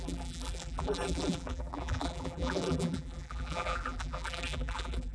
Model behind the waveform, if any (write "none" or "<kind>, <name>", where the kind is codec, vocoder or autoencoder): vocoder, BigVGAN v2